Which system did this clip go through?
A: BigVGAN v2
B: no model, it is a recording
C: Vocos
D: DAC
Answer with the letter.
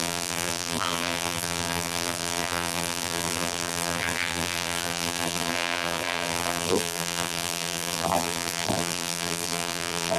A